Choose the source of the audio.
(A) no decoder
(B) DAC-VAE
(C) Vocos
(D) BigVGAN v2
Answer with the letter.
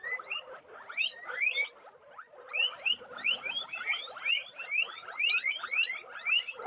A